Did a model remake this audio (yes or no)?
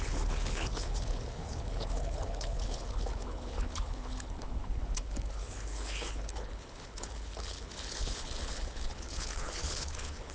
yes